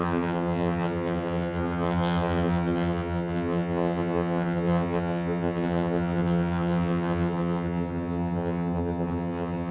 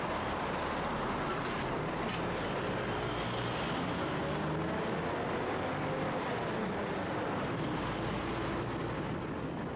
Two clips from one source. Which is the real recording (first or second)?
second